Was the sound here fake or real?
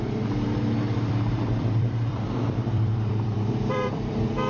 fake